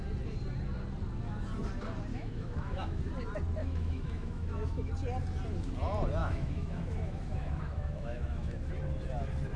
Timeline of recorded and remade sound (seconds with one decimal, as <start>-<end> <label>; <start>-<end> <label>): 0.0-2.1 recorded; 2.1-3.0 remade; 3.0-3.6 recorded; 3.6-4.9 remade; 4.9-6.2 recorded; 6.2-8.7 remade; 8.7-9.6 recorded